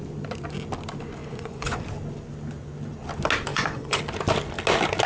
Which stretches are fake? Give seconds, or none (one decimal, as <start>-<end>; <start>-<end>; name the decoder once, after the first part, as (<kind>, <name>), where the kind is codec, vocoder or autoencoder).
1.2-1.8 (vocoder, Vocos); 3.5-4.0